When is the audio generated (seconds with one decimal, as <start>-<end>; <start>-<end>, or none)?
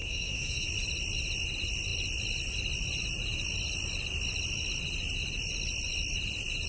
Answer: 0.0-0.7